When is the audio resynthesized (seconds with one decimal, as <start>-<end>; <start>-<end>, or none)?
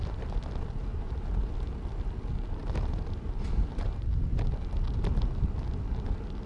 0.9-1.5; 2.6-4.1